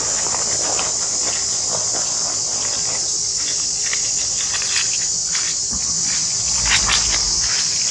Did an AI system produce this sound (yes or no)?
no